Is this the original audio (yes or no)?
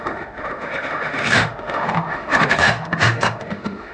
no